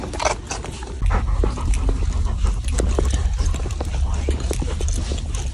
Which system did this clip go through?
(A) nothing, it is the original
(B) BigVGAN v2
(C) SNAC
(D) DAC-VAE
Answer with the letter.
A